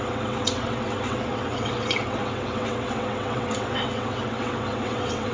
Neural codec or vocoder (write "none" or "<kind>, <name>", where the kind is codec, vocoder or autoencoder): vocoder, WaveNeXt